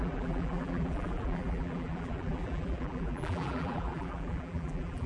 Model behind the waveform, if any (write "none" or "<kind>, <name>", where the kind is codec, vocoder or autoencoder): vocoder, BigVGAN v2